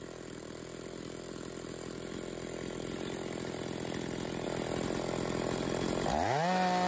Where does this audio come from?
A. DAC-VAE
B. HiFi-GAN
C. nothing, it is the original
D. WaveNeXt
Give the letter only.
C